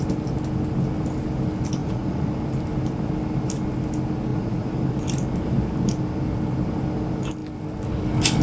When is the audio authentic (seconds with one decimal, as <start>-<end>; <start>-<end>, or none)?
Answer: 0.0-1.8; 2.3-4.3; 4.8-8.4